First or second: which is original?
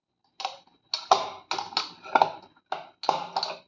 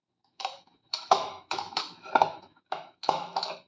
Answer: first